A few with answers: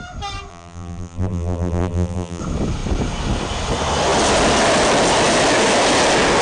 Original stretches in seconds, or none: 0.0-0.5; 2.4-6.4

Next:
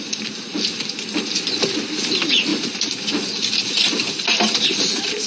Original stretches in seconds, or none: 0.0-2.5; 3.1-5.3

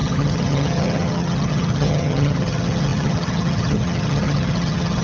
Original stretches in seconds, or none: none

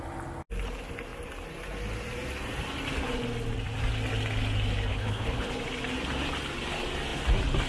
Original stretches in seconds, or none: 0.0-4.9; 5.5-7.7

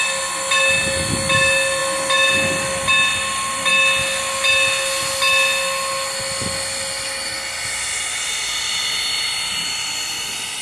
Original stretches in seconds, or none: 0.0-10.6

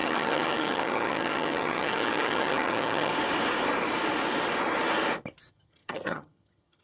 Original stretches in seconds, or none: 3.1-5.5

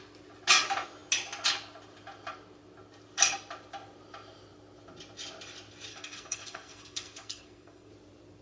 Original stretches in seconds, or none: 0.0-5.9; 7.9-8.4

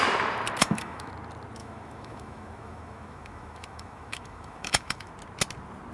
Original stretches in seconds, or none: 0.0-0.6; 1.1-1.6; 5.1-5.9